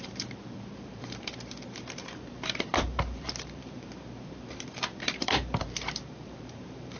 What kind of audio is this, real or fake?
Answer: fake